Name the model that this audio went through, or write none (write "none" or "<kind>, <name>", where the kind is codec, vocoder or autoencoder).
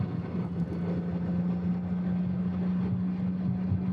none